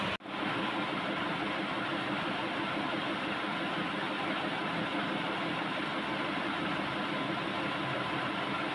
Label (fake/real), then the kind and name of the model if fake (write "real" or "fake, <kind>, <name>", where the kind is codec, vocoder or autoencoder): real